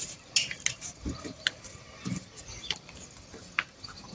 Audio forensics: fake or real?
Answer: fake